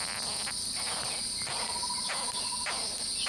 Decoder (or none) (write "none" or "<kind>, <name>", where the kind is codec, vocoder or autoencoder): none